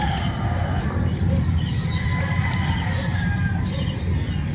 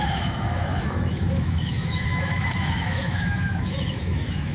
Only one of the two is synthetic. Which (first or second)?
second